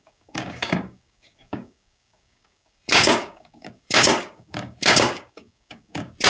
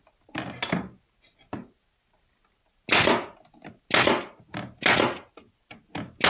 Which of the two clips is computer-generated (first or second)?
first